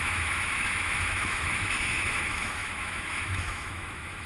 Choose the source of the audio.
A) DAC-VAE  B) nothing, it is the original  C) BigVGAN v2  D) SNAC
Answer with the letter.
A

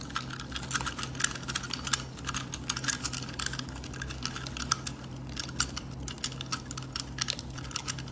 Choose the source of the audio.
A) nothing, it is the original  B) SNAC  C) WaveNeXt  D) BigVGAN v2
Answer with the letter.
A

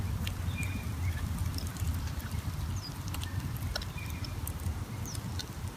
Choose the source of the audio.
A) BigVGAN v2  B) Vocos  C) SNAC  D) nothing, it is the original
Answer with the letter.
A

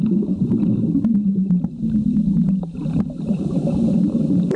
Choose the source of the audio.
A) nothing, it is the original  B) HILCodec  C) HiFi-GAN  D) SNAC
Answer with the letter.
A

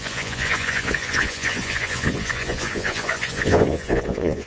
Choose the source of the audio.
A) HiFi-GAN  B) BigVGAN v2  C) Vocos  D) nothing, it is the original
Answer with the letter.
C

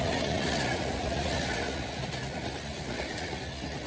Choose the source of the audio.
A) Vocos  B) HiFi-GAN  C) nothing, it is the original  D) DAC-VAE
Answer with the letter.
A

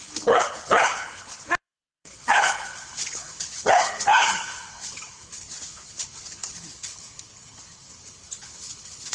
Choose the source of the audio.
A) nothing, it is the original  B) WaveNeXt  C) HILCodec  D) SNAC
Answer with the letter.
C